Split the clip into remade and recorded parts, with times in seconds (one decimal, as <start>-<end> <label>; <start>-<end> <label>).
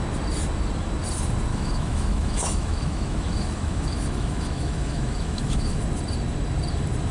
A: 0.0-1.5 recorded; 1.5-5.8 remade; 5.8-7.1 recorded